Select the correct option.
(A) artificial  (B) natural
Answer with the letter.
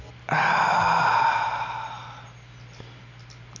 B